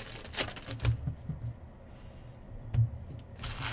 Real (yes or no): yes